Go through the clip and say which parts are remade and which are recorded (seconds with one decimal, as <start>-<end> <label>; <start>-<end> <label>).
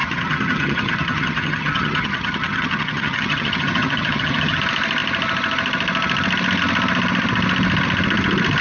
0.0-4.6 remade; 4.6-8.6 recorded